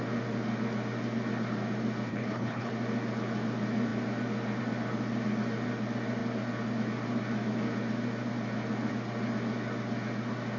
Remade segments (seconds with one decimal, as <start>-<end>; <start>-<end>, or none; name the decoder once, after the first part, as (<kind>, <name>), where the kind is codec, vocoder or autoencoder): 2.1-2.7 (codec, HILCodec)